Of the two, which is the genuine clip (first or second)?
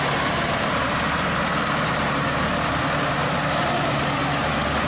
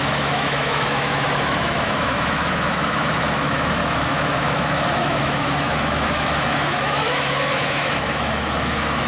first